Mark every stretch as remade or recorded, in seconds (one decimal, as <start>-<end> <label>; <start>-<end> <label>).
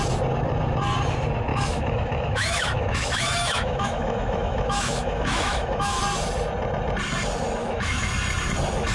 0.0-1.5 recorded; 1.5-6.0 remade; 6.0-7.6 recorded; 7.6-8.1 remade; 8.1-8.9 recorded